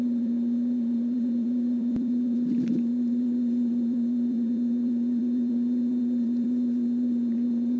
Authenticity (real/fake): fake